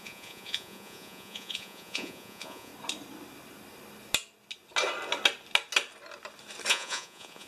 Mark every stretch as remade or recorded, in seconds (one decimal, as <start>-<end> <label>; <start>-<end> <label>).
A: 0.0-2.7 remade; 2.7-6.7 recorded; 6.7-7.5 remade